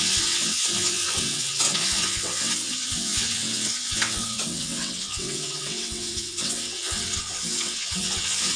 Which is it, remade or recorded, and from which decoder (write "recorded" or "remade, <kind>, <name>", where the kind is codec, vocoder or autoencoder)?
remade, vocoder, WaveNeXt